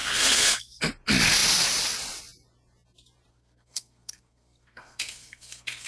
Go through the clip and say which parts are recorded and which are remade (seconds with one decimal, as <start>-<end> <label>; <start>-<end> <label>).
0.0-0.8 remade; 0.8-3.3 recorded; 3.3-5.9 remade